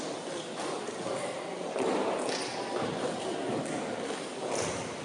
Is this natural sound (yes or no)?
yes